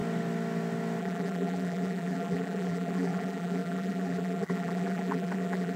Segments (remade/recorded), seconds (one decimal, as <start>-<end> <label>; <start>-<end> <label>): 0.0-1.0 recorded; 1.0-5.8 remade